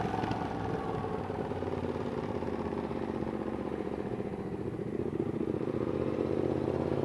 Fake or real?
real